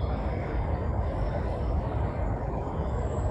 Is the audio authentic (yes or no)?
no